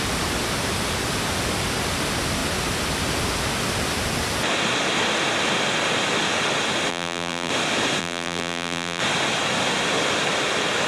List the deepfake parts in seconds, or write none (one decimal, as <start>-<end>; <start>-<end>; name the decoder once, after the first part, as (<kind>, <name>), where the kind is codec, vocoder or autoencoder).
6.9-7.5 (vocoder, BigVGAN v2); 8.0-9.0